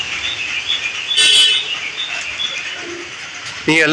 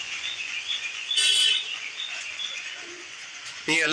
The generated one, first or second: second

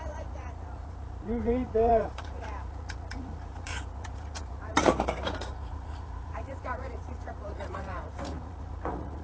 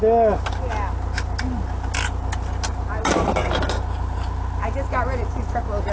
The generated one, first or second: first